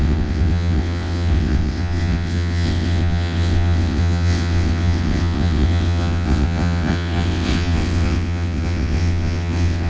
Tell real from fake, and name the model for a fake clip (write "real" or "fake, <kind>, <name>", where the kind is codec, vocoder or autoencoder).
fake, vocoder, WaveNeXt